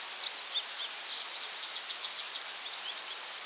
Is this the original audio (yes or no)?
yes